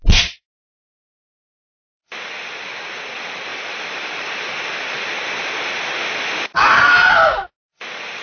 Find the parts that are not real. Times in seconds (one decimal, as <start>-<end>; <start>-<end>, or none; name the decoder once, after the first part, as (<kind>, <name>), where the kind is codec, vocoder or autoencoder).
3.5-5.0 (vocoder, BigVGAN v2)